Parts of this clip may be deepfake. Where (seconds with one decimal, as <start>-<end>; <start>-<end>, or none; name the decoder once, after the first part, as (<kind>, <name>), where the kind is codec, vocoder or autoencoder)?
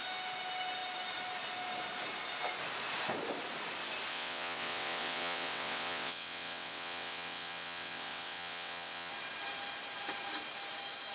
4.1-9.1 (vocoder, WaveNeXt)